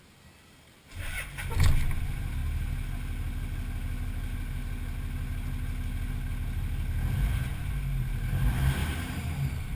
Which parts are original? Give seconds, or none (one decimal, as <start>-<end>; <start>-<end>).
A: 0.0-8.8